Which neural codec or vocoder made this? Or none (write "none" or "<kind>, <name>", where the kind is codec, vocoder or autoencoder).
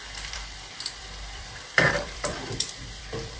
vocoder, BigVGAN v2